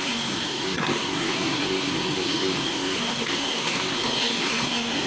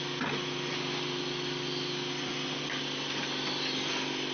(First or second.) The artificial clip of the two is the first